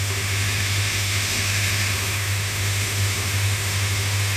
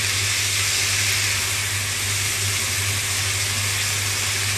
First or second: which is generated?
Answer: first